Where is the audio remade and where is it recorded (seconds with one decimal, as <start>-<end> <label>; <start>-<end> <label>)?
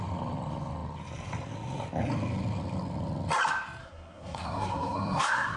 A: 0.0-3.8 recorded; 3.8-5.6 remade